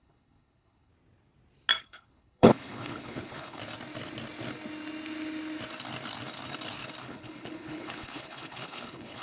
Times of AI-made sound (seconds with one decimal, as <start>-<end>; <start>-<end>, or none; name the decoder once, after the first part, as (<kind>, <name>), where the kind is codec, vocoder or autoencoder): 0.0-0.9 (codec, HILCodec); 1.8-3.6; 7.0-9.2